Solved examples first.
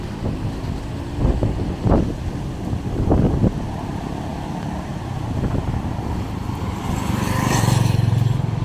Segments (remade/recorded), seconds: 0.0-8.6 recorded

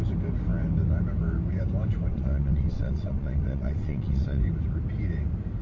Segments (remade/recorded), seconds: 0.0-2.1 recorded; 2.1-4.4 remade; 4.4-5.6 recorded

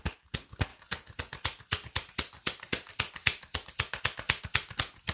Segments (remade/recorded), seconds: 0.0-0.7 recorded; 0.7-2.1 remade; 2.1-3.2 recorded; 3.2-4.0 remade; 4.0-5.1 recorded

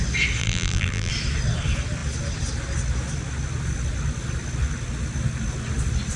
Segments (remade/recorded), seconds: 0.0-0.4 recorded; 0.4-1.1 remade; 1.1-6.2 recorded

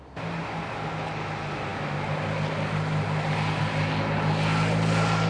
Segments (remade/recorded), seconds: 0.0-5.3 recorded